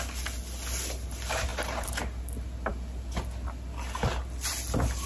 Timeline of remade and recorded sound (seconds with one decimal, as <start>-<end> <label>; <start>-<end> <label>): 0.0-1.5 recorded; 1.5-2.0 remade; 2.0-5.1 recorded